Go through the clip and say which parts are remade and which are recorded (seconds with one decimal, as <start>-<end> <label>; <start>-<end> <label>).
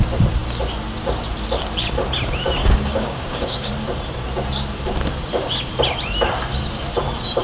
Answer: 0.0-2.6 recorded; 2.6-3.7 remade; 3.7-7.4 recorded